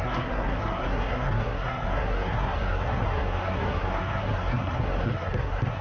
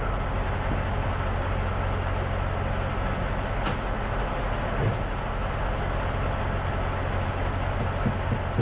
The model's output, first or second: first